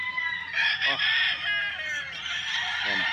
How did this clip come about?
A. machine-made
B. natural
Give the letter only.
B